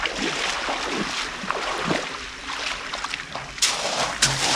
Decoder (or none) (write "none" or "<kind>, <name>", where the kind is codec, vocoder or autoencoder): none